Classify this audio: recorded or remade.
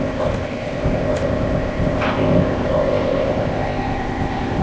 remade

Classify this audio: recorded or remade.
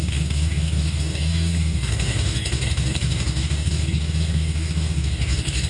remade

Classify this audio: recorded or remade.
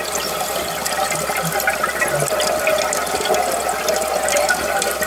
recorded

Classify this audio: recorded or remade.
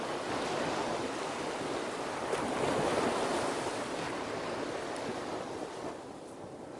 recorded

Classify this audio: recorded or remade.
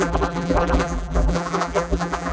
remade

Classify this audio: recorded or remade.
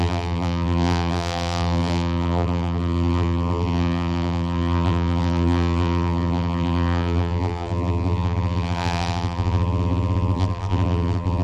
remade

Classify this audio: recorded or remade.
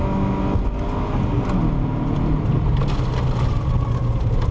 recorded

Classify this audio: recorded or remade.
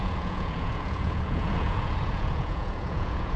remade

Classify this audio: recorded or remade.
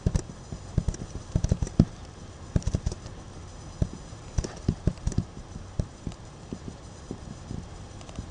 remade